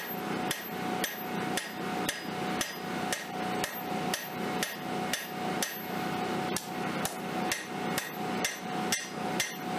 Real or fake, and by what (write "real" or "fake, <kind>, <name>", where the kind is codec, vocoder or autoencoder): real